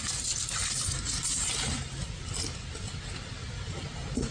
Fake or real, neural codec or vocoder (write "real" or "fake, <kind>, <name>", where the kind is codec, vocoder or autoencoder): real